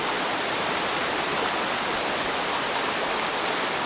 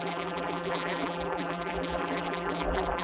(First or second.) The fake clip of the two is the second